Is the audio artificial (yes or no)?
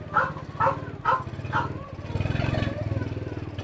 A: no